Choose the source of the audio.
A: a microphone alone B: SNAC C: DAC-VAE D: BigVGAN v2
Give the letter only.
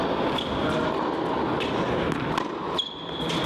A